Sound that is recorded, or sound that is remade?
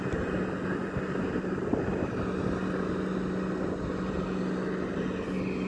recorded